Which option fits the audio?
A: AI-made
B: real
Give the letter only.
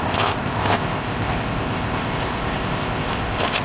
A